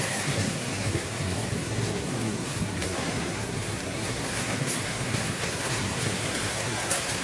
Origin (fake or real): fake